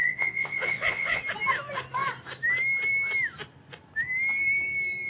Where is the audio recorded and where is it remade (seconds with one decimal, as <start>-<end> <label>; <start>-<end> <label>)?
0.0-1.2 remade; 1.2-5.1 recorded